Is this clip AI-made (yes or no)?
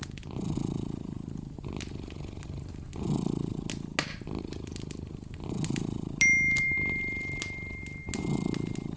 no